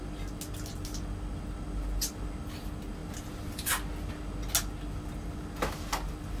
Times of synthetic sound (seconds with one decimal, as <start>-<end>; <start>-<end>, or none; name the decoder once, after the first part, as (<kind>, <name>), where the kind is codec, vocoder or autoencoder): none